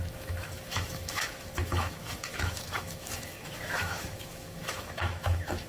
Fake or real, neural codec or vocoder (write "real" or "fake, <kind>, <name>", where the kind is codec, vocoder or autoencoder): fake, autoencoder, DAC-VAE